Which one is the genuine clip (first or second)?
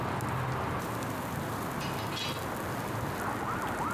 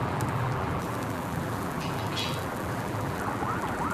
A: first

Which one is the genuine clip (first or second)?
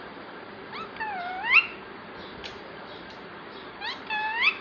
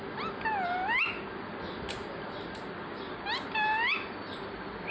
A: second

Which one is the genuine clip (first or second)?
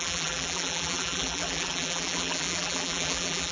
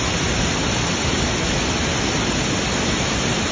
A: second